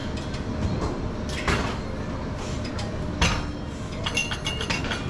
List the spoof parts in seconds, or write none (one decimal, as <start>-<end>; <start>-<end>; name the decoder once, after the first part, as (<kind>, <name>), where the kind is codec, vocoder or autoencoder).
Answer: none